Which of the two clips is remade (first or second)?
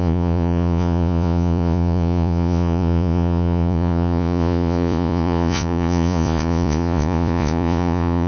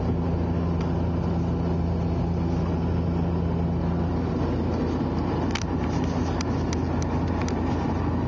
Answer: first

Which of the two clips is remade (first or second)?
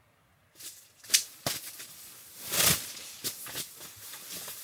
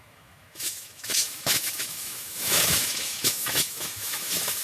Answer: second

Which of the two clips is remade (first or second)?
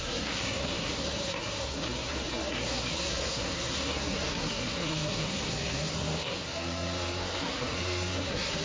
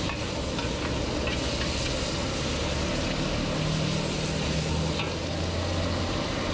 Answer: first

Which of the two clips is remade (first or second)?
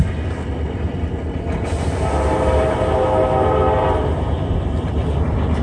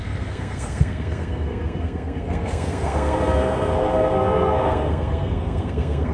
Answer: second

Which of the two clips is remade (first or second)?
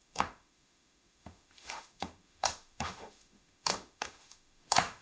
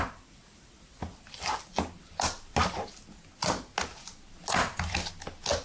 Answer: first